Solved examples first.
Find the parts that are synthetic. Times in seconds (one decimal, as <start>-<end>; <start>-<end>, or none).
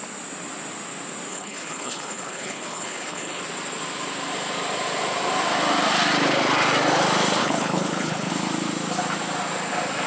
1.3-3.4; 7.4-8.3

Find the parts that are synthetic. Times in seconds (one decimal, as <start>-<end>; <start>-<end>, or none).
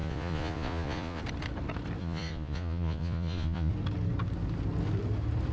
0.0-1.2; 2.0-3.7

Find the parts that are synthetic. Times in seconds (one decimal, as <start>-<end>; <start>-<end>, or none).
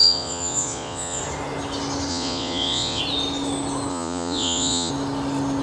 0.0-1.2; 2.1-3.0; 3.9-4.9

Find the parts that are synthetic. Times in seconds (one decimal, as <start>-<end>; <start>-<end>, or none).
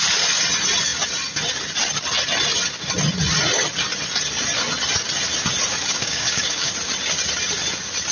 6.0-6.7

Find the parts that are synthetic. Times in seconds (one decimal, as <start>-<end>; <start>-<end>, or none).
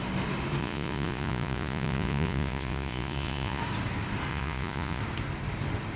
0.6-3.6; 4.3-5.0